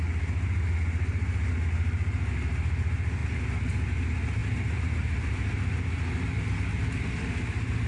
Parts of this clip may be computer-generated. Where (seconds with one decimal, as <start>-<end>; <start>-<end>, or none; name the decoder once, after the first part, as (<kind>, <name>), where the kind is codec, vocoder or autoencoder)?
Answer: none